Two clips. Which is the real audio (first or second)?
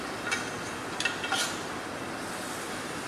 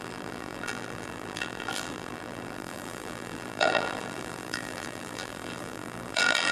first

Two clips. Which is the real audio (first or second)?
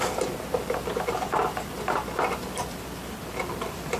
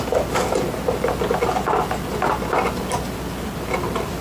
second